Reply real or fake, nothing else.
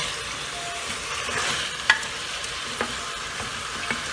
real